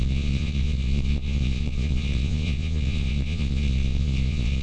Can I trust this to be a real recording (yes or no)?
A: no